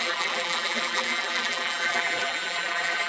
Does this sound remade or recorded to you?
remade